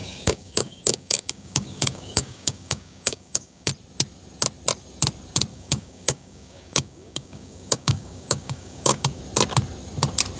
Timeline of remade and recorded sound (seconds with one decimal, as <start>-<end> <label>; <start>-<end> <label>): 0.0-3.7 remade; 3.7-5.5 recorded; 5.5-9.2 remade; 9.2-10.4 recorded